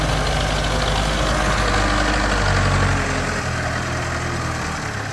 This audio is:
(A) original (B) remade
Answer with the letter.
A